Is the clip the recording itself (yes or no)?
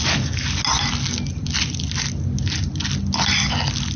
yes